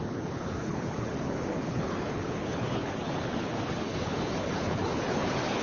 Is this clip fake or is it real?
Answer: fake